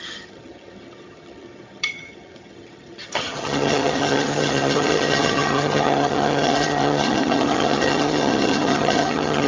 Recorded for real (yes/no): no